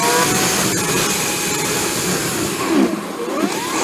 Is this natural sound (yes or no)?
yes